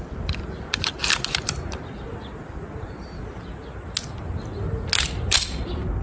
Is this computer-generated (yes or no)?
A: no